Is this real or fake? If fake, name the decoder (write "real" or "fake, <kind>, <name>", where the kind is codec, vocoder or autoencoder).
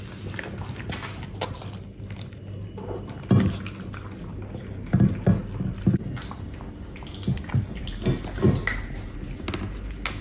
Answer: real